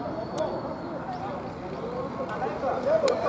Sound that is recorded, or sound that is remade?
recorded